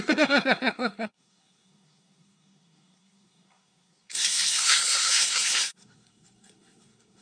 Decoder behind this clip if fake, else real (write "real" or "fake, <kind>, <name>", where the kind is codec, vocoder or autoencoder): fake, codec, SNAC